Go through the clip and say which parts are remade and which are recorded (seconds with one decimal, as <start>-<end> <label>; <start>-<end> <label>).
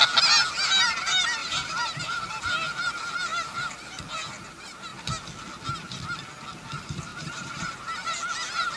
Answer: 0.0-1.4 recorded; 1.4-2.5 remade; 2.5-7.1 recorded; 7.1-7.8 remade; 7.8-8.8 recorded